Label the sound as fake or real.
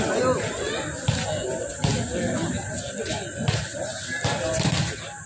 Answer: real